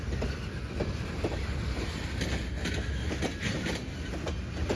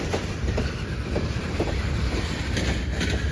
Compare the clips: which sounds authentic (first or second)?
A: first